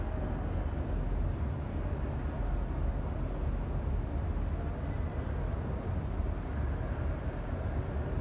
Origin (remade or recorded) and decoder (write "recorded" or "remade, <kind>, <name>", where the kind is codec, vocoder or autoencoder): recorded